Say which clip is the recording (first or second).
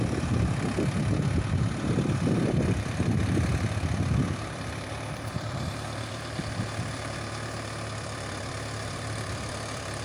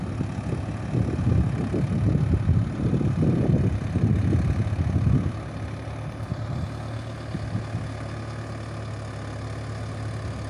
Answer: second